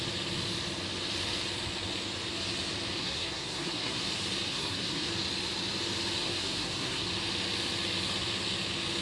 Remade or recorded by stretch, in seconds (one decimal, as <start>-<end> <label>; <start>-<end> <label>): 0.0-3.0 recorded; 3.0-4.0 remade; 4.0-4.5 recorded; 4.5-5.1 remade; 5.1-6.2 recorded; 6.2-7.1 remade; 7.1-9.0 recorded